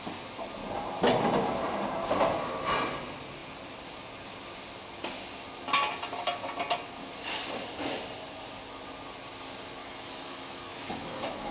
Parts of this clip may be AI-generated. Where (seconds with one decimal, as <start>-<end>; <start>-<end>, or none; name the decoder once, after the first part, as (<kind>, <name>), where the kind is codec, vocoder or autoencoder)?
9.8-11.5 (autoencoder, DAC-VAE)